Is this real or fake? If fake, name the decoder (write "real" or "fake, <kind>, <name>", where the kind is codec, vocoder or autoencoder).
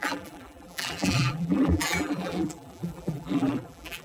fake, vocoder, BigVGAN v2